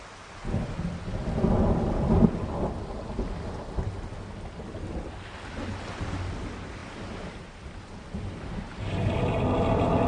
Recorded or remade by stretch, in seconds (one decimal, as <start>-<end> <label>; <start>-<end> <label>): 0.0-10.1 recorded